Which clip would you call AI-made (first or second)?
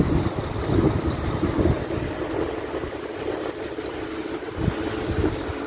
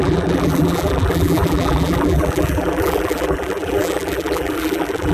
second